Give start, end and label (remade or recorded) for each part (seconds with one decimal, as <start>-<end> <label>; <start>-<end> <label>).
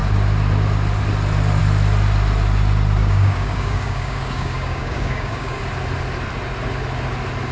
0.0-3.0 recorded; 3.0-5.6 remade; 5.6-7.5 recorded